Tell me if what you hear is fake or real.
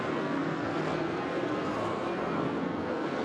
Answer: fake